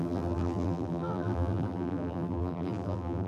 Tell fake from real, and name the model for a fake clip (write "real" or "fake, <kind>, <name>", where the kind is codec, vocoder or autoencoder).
fake, vocoder, BigVGAN v2